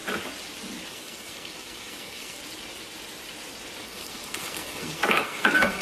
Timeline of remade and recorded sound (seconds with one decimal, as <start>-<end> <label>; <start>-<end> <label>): 0.0-0.9 recorded; 0.9-2.4 remade; 2.4-3.8 recorded; 3.8-5.8 remade